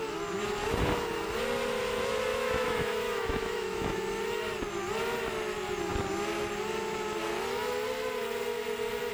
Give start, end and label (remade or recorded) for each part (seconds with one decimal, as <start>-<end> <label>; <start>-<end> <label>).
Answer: 0.0-2.3 recorded; 2.3-4.0 remade; 4.0-9.1 recorded